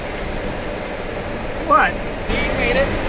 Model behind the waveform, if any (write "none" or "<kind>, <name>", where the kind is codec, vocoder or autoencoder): none